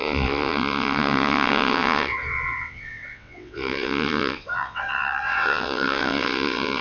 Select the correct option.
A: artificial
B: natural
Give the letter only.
A